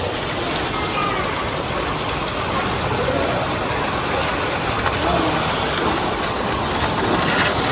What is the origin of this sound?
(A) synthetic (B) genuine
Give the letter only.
B